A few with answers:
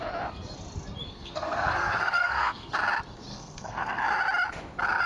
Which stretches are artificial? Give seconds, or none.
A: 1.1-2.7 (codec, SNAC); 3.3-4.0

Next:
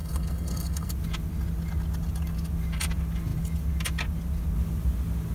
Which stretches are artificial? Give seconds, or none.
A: 0.0-0.9 (codec, SNAC)